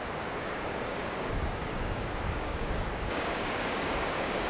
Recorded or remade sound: remade